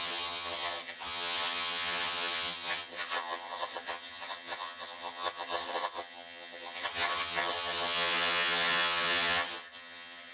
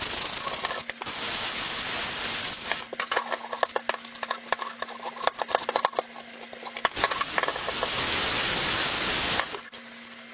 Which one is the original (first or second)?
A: second